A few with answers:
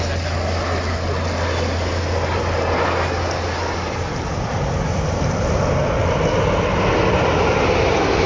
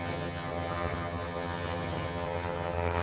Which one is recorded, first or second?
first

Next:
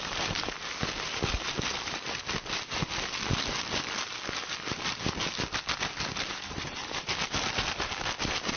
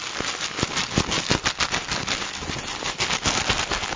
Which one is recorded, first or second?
second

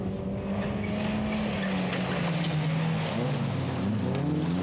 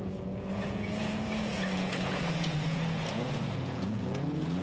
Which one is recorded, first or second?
first